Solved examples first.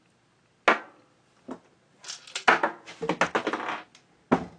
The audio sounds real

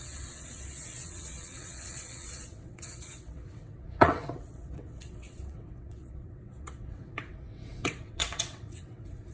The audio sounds fake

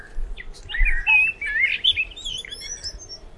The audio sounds real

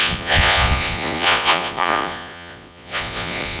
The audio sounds fake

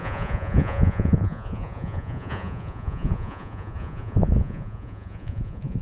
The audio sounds fake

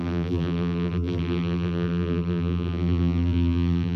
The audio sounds fake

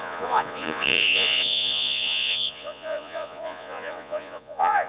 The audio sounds fake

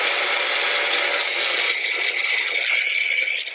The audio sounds real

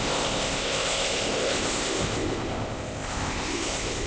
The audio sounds fake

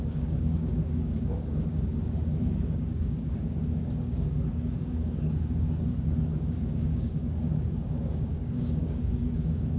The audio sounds fake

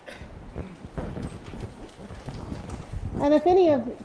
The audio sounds real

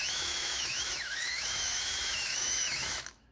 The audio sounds fake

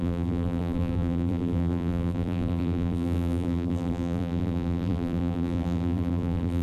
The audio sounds fake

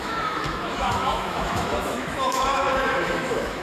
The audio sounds fake